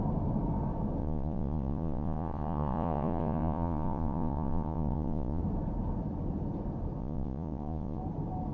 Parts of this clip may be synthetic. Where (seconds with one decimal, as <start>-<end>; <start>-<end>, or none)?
1.0-5.4; 7.0-8.0